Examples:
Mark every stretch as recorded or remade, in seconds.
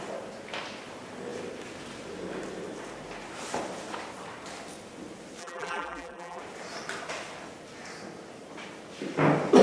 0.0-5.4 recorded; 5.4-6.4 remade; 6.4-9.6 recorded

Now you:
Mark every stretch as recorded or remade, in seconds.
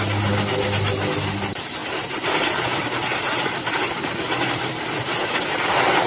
0.0-6.1 recorded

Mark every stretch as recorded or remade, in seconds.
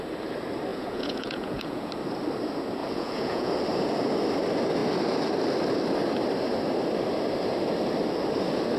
0.0-0.7 recorded; 0.7-1.9 remade; 1.9-2.8 recorded; 2.8-3.5 remade; 3.5-8.8 recorded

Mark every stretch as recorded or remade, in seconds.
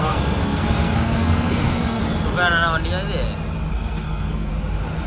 0.0-2.0 remade; 2.0-3.7 recorded; 3.7-4.5 remade; 4.5-5.1 recorded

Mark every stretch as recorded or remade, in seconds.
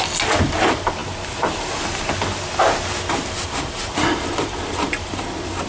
0.0-5.7 recorded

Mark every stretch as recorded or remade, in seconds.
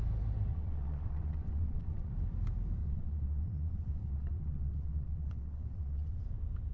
0.0-0.5 recorded; 0.5-2.1 remade; 2.1-2.8 recorded; 2.8-6.2 remade; 6.2-6.7 recorded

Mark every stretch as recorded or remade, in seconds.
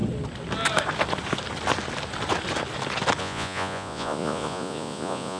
0.0-3.2 recorded; 3.2-5.4 remade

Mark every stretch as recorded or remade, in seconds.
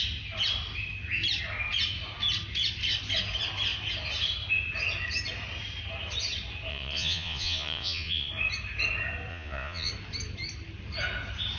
0.0-6.7 recorded; 6.7-8.3 remade; 8.3-9.3 recorded; 9.3-9.9 remade; 9.9-11.6 recorded